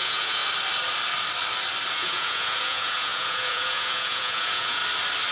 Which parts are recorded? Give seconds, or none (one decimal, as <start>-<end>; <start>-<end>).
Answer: 0.4-1.9; 4.8-5.3